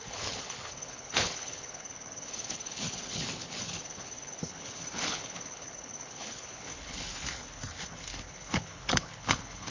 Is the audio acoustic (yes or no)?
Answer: no